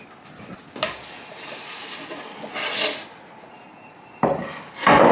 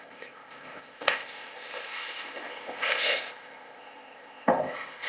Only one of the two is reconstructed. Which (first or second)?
second